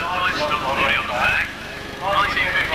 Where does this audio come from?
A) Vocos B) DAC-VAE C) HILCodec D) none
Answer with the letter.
B